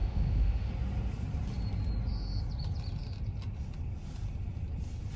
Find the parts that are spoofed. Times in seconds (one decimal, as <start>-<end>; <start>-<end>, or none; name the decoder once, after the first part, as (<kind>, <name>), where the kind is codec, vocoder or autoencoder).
0.0-0.7 (autoencoder, DAC-VAE)